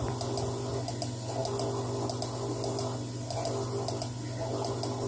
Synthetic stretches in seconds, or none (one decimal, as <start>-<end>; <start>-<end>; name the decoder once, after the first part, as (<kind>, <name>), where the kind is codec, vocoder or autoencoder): none